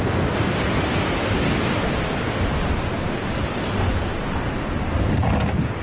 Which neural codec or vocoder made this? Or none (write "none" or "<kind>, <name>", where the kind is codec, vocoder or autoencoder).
none